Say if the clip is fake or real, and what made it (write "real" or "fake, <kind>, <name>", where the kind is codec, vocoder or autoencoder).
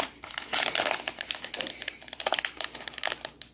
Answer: real